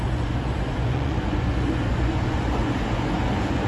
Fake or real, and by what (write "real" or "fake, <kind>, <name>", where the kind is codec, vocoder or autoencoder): fake, vocoder, Vocos